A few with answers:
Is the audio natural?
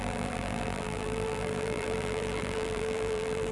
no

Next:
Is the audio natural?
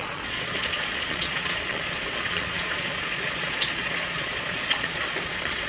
no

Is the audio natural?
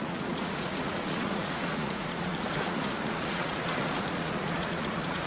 no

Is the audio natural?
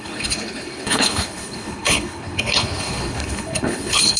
no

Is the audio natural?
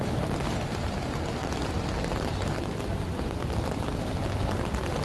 yes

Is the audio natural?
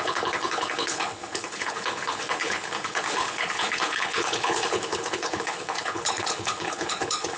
no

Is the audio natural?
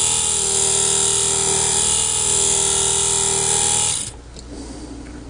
yes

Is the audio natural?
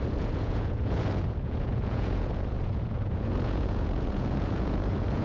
no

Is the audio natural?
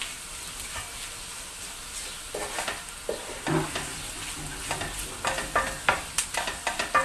yes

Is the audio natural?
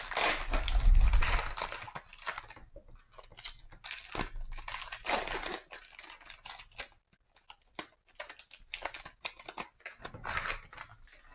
yes